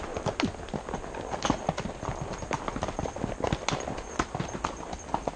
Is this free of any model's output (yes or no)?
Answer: yes